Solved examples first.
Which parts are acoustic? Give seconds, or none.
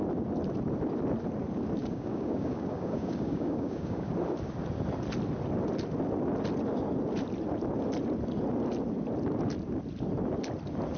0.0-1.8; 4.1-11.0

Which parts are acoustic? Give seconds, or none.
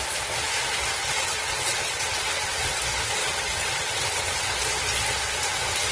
0.0-1.0; 2.8-3.2; 4.4-5.9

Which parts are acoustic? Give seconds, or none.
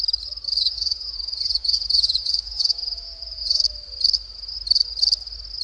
0.0-0.6; 3.6-5.6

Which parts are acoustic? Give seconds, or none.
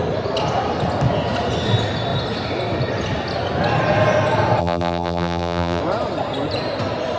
0.0-4.6; 5.8-7.2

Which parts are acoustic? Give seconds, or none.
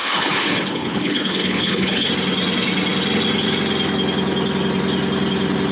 2.1-5.7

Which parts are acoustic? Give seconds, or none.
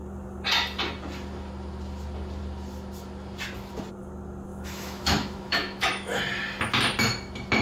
0.0-4.5; 6.2-7.6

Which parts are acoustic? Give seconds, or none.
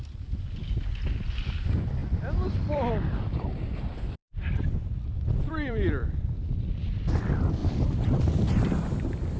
0.0-2.0; 2.9-4.2; 6.7-7.6; 8.2-9.4